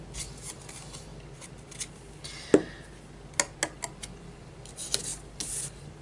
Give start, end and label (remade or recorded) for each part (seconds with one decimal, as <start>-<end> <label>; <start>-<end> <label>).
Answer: 0.0-6.0 recorded